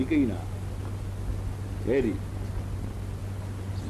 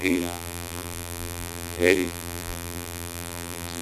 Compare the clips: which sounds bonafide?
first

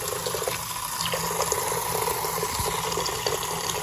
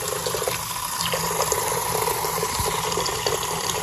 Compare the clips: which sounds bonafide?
first